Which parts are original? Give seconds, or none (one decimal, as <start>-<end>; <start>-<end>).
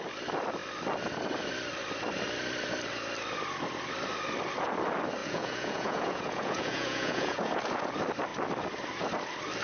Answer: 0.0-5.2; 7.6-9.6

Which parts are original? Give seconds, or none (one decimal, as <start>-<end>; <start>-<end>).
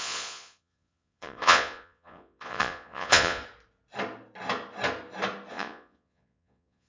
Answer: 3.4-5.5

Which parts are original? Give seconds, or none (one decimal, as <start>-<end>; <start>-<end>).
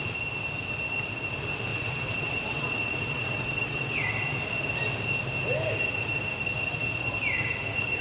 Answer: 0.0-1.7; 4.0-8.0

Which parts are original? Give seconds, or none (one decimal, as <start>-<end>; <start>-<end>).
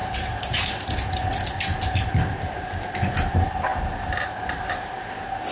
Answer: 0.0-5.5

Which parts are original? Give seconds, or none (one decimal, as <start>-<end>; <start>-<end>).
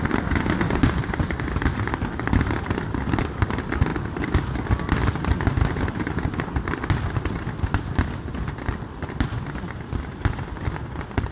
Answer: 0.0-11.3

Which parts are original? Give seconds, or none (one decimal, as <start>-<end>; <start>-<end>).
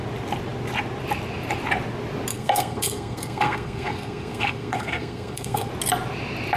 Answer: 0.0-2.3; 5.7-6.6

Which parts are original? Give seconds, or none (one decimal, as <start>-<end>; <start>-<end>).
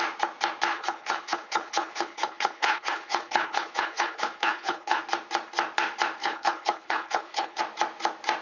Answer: 0.0-0.7; 5.0-6.2; 7.6-8.4